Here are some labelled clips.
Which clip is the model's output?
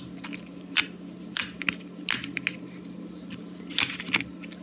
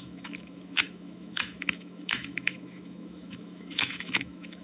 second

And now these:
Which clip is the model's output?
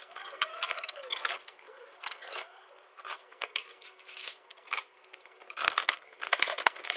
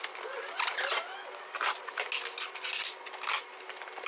first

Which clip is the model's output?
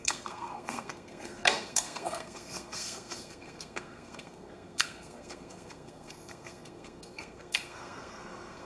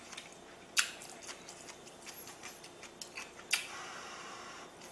first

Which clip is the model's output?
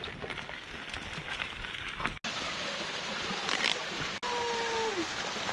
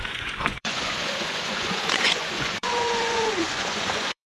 second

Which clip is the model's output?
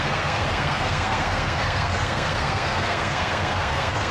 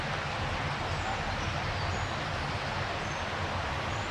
first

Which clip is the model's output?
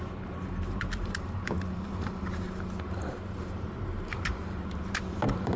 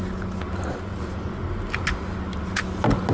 first